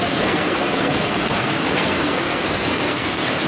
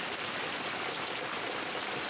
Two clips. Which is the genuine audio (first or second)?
second